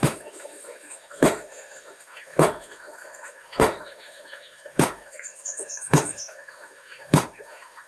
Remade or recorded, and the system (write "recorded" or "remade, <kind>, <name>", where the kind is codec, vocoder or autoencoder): remade, autoencoder, DAC-VAE